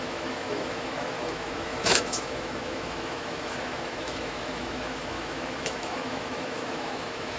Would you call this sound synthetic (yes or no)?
yes